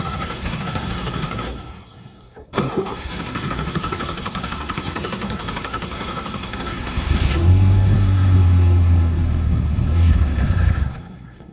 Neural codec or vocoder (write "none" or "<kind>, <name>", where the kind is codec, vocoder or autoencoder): codec, SNAC